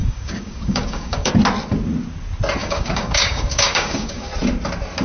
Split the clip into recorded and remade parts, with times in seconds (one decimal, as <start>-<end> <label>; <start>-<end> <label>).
0.0-1.3 remade; 1.3-2.6 recorded; 2.6-4.3 remade; 4.3-5.0 recorded